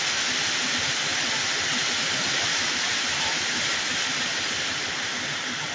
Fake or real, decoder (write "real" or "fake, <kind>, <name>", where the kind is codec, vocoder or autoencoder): real